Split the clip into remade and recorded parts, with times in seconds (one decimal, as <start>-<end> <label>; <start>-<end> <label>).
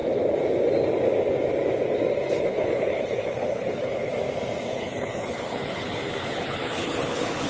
0.0-2.5 recorded; 2.5-4.1 remade; 4.1-4.7 recorded; 4.7-7.5 remade